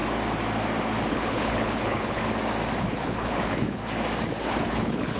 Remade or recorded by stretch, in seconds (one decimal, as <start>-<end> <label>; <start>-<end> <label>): 0.0-1.1 recorded; 1.1-2.2 remade; 2.2-2.8 recorded; 2.8-3.8 remade; 3.8-4.4 recorded; 4.4-5.2 remade